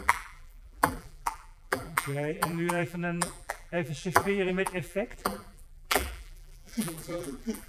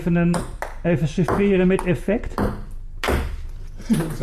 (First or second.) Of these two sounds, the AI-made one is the first